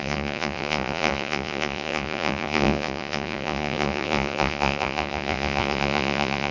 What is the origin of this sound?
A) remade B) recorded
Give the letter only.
A